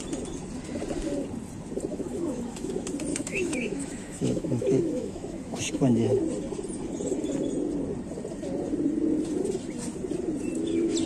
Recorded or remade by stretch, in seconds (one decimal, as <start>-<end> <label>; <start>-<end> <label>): 0.0-1.9 recorded; 1.9-2.7 remade; 2.7-3.1 recorded; 3.1-6.2 remade; 6.2-11.1 recorded

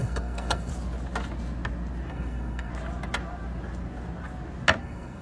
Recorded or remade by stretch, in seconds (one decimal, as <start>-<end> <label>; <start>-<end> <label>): 0.0-0.7 remade; 0.7-2.1 recorded; 2.1-2.7 remade; 2.7-4.8 recorded; 4.8-5.2 remade

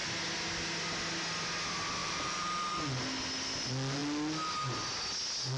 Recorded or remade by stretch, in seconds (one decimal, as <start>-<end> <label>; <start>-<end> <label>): 0.0-2.0 recorded; 2.0-2.7 remade; 2.7-5.6 recorded